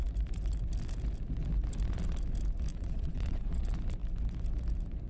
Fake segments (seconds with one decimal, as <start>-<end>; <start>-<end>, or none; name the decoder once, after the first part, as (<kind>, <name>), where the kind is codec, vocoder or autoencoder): 2.7-3.6 (vocoder, WaveNeXt)